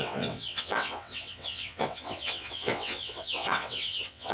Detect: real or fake fake